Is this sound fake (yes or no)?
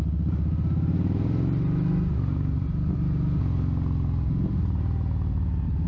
no